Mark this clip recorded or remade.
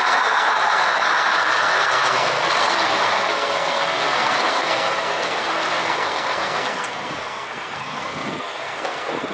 remade